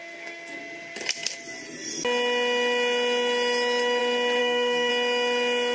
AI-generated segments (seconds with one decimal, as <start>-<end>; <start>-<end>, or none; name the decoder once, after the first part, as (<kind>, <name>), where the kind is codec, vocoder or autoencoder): 0.0-0.6 (codec, SNAC); 4.4-4.9